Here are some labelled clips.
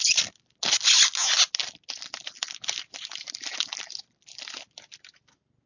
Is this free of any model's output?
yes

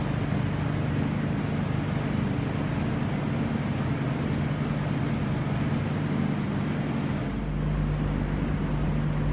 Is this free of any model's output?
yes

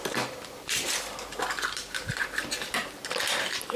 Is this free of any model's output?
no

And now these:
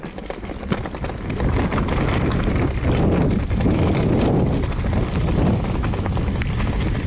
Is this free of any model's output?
yes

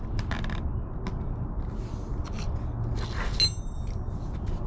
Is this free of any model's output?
yes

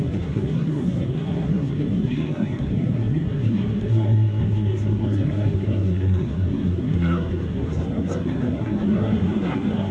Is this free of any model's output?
no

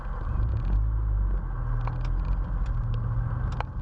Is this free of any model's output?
yes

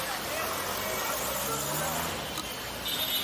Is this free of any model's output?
yes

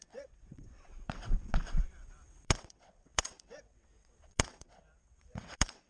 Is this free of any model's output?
no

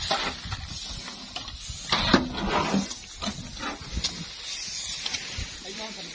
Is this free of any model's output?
yes